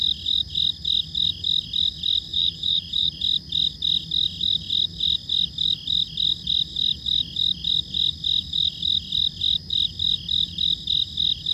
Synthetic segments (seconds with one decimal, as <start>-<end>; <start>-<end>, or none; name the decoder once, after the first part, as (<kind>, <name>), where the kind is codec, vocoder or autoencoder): 2.3-3.2 (vocoder, BigVGAN v2)